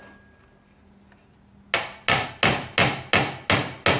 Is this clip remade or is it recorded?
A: recorded